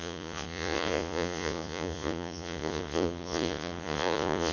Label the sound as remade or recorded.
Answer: remade